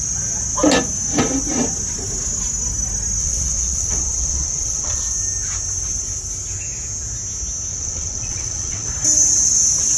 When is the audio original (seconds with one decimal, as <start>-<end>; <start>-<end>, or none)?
0.0-3.2; 5.0-7.7; 8.9-10.0